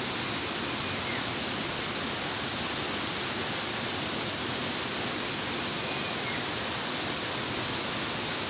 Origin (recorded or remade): recorded